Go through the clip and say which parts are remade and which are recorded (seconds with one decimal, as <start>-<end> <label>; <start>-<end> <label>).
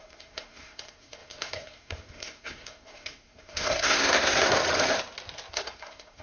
0.0-4.6 remade; 4.6-5.5 recorded; 5.5-6.2 remade